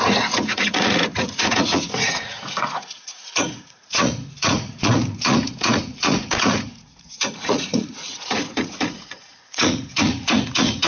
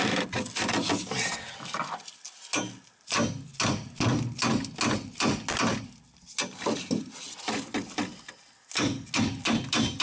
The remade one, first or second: first